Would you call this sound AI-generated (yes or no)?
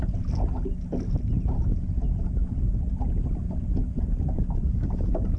no